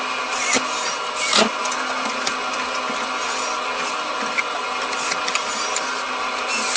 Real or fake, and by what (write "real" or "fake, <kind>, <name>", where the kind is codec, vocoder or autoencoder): real